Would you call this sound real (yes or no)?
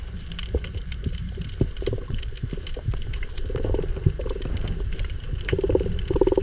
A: no